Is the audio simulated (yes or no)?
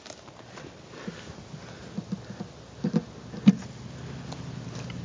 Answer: no